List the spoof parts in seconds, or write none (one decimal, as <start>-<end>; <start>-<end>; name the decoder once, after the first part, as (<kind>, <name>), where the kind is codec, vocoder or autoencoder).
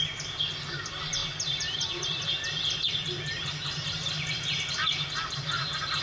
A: 1.2-2.2 (vocoder, BigVGAN v2); 3.0-4.4